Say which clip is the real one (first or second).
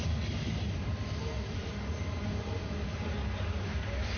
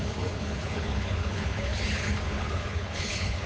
first